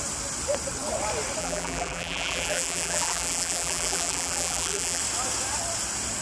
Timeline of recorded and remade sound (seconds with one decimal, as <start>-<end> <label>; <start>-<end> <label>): 0.0-1.4 recorded; 1.4-5.0 remade; 5.0-6.2 recorded